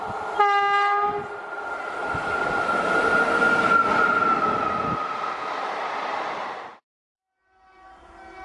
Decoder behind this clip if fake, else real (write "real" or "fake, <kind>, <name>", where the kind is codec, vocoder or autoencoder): real